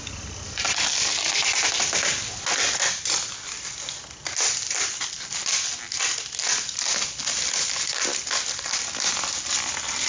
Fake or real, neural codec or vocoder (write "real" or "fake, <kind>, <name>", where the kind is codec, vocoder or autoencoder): real